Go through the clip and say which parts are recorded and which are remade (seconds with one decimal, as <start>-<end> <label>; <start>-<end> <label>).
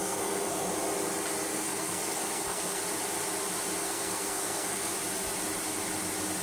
0.0-0.7 remade; 0.7-1.5 recorded; 1.5-2.8 remade; 2.8-3.8 recorded; 3.8-4.9 remade; 4.9-6.4 recorded